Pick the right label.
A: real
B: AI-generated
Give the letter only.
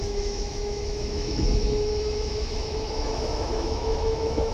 B